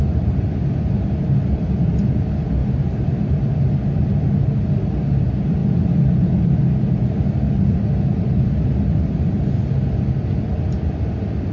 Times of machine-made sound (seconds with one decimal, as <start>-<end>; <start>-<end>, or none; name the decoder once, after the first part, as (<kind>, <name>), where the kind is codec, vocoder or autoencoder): none